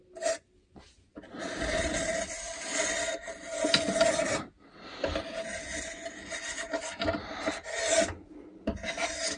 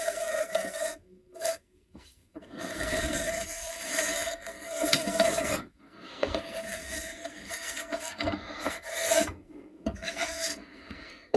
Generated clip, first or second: second